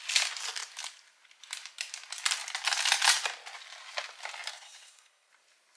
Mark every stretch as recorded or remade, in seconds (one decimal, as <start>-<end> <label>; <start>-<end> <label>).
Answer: 0.0-4.5 recorded; 4.5-5.3 remade; 5.3-5.8 recorded